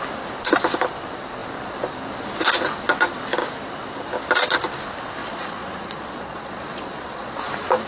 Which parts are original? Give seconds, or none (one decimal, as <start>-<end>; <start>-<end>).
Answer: 0.0-5.2; 7.4-7.9